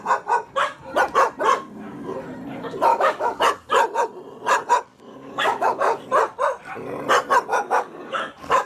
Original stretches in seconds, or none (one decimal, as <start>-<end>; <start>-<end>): 0.0-2.9; 3.4-4.9; 6.0-7.5

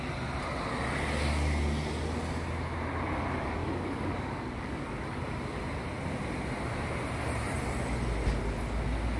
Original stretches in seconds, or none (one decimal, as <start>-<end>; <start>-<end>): 0.0-3.6; 5.2-9.2

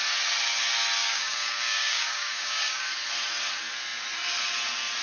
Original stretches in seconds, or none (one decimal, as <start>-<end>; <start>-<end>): 0.0-1.0; 2.8-5.0

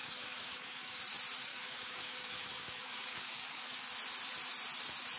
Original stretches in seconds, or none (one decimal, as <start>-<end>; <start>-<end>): 1.0-1.5; 3.8-5.2

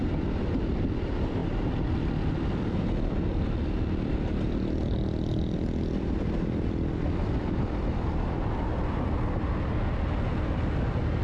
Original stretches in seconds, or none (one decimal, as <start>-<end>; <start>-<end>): 0.0-11.2

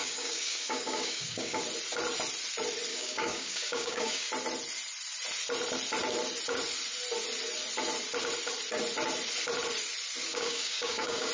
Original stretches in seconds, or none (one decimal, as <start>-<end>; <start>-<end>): 1.6-2.9; 4.3-10.3

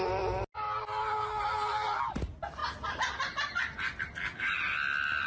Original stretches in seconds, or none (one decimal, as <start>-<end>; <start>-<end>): 0.0-5.3